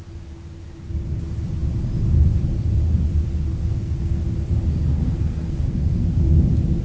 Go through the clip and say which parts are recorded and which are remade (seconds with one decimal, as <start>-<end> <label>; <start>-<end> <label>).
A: 0.0-3.5 recorded; 3.5-4.2 remade; 4.2-4.9 recorded; 4.9-6.2 remade; 6.2-6.8 recorded